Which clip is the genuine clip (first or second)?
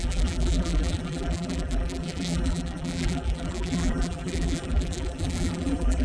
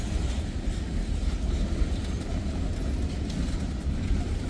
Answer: second